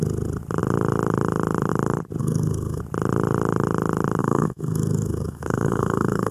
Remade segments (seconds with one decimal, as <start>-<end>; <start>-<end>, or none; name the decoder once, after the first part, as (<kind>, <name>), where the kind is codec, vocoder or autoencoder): 2.2-2.8 (codec, SNAC); 4.2-6.3